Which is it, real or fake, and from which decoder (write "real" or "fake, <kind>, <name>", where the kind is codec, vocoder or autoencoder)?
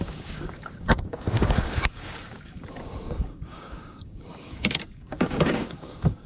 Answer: fake, codec, DAC